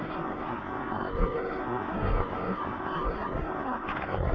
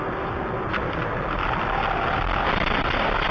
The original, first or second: second